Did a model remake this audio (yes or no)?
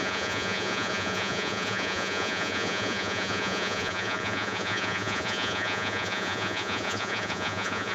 yes